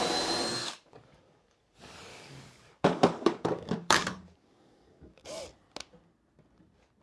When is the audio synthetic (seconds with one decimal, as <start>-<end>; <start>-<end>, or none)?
0.6-1.6; 2.1-5.4